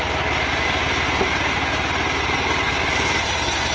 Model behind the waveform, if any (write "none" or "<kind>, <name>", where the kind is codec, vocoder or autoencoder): none